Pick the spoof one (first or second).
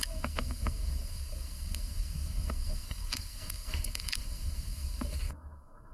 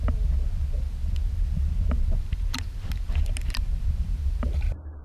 first